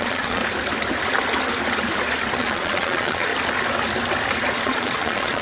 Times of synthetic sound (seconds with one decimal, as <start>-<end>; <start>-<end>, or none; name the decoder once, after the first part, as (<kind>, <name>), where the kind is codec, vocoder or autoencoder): 0.0-0.4 (vocoder, Vocos); 2.4-3.3; 4.6-5.4